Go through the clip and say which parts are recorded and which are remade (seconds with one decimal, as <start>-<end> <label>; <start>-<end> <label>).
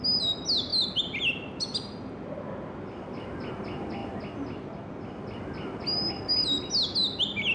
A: 0.0-7.5 recorded